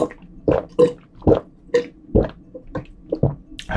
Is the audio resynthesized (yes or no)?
no